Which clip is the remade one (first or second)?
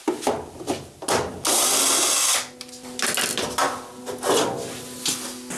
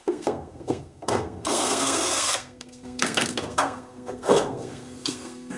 second